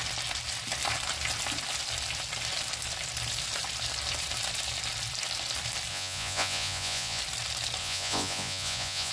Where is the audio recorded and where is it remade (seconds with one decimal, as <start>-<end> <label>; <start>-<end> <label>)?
0.0-5.9 recorded; 5.9-7.2 remade; 7.2-7.8 recorded; 7.8-9.1 remade